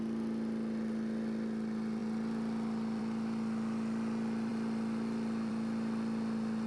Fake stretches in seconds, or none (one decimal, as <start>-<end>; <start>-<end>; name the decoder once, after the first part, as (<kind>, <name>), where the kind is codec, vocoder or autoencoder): none